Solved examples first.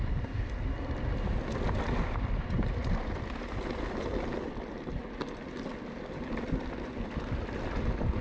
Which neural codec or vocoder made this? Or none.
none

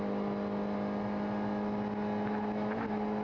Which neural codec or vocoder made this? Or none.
none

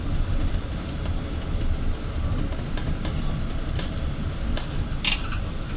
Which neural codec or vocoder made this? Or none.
none